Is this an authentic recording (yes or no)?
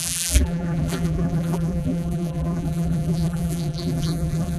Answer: no